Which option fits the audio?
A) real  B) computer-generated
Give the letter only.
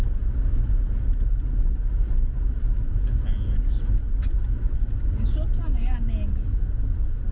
A